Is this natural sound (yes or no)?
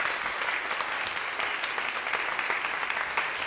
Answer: yes